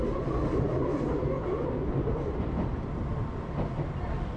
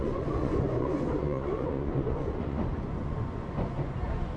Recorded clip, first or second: first